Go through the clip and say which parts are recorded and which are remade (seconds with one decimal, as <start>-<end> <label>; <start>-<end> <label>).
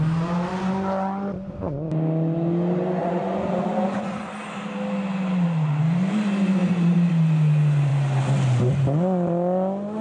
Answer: 0.0-3.0 recorded; 3.0-4.3 remade; 4.3-6.6 recorded; 6.6-7.1 remade; 7.1-10.0 recorded